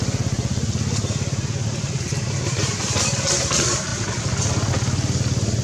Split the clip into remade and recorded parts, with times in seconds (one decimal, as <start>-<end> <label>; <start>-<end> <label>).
0.0-2.1 recorded; 2.1-2.8 remade; 2.8-5.6 recorded